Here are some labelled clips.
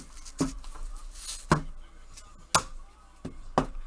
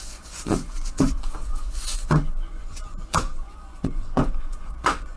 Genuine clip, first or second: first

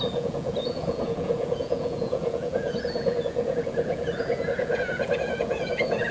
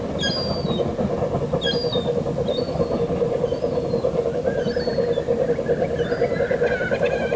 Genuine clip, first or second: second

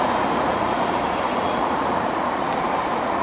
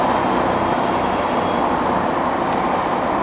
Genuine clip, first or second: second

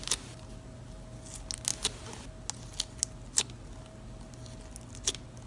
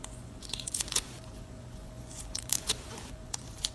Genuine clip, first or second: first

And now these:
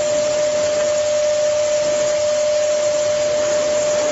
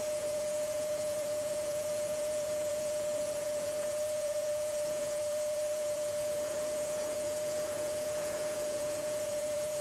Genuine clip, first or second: first